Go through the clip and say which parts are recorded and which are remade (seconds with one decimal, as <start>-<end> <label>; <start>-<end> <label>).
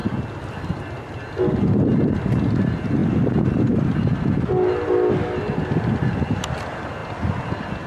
0.0-7.9 recorded